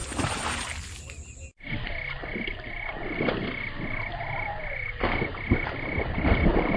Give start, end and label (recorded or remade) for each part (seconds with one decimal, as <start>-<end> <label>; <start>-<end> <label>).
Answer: 0.0-0.7 remade; 0.7-2.2 recorded; 2.2-3.0 remade; 3.0-4.6 recorded; 4.6-6.8 remade